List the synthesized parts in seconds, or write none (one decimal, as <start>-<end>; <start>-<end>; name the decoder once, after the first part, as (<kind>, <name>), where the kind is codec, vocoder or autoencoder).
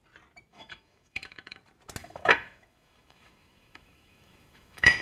0.5-1.6 (autoencoder, DAC-VAE); 2.0-5.0